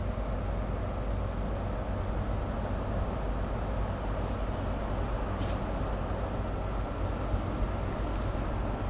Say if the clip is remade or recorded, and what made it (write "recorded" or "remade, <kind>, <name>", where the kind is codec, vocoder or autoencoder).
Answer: recorded